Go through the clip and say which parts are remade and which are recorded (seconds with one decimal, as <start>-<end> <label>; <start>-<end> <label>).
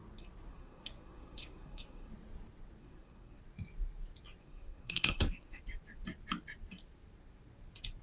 0.0-0.5 recorded; 0.5-2.1 remade; 2.1-2.8 recorded; 2.8-3.4 remade; 3.4-4.4 recorded; 4.4-5.6 remade; 5.6-8.0 recorded